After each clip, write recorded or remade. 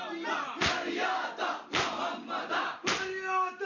recorded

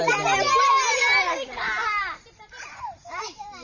remade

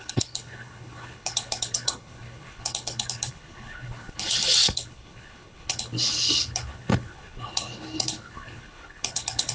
remade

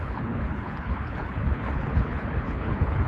remade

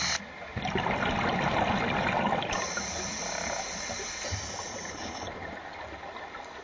recorded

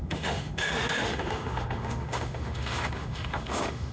remade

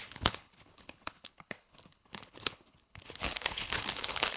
remade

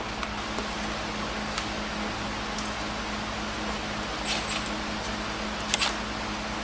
recorded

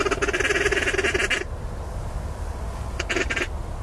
recorded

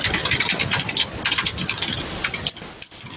recorded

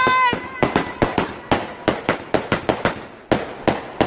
recorded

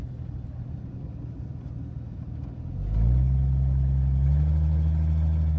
recorded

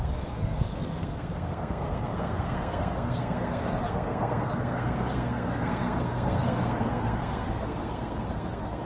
remade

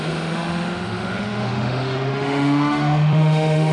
remade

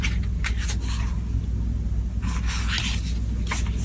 recorded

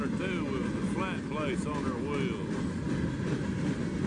recorded